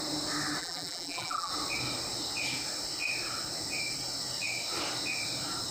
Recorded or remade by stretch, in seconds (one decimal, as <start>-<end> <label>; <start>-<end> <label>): 0.0-0.6 recorded; 0.6-1.5 remade; 1.5-5.7 recorded

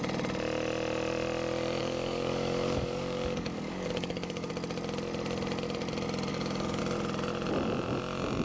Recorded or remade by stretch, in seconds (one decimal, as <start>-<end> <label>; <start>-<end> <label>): 0.0-1.8 recorded; 1.8-4.5 remade; 4.5-6.3 recorded; 6.3-6.8 remade; 6.8-8.4 recorded

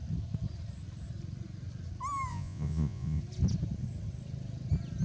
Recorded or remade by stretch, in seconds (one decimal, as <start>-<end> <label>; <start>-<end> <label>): 0.0-2.3 recorded; 2.3-3.2 remade; 3.2-5.0 recorded

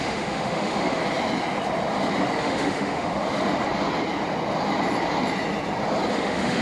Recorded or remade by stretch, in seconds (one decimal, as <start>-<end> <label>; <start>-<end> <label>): 0.0-1.0 remade; 1.0-2.4 recorded; 2.4-3.1 remade; 3.1-6.1 recorded; 6.1-6.6 remade